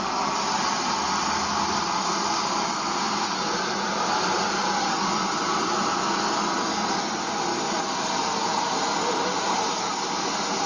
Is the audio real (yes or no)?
yes